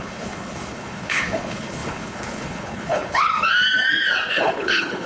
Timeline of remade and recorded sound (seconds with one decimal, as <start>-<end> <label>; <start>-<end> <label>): 0.0-3.3 remade; 3.3-4.3 recorded; 4.3-5.1 remade